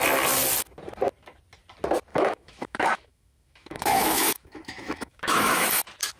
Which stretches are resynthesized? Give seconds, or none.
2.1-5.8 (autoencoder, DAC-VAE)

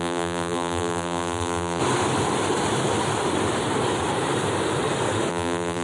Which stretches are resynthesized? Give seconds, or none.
0.0-1.8 (vocoder, BigVGAN v2); 5.3-5.8

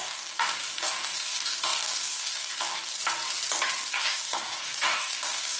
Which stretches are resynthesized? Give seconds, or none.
0.0-3.0 (codec, DAC); 3.9-5.6

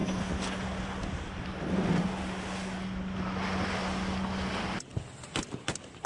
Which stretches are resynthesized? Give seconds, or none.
none

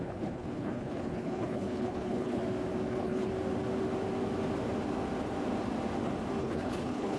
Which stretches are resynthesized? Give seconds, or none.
0.0-2.4 (codec, HILCodec); 2.9-3.3; 6.4-7.2

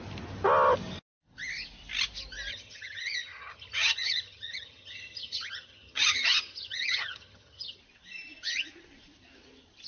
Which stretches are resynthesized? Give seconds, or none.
2.5-7.8 (vocoder, HiFi-GAN)